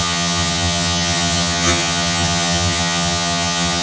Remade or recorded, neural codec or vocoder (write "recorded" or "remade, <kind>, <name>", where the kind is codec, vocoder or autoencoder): remade, vocoder, HiFi-GAN